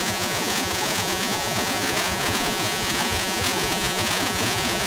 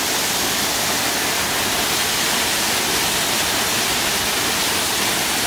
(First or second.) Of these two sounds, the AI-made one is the first